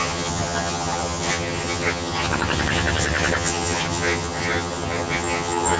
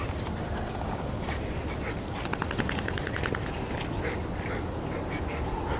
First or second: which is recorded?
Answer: second